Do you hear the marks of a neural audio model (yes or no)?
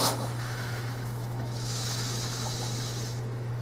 yes